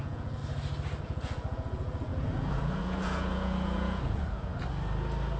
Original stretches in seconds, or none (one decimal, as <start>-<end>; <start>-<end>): 0.4-1.0; 4.5-5.4